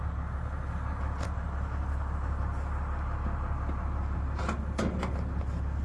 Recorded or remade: recorded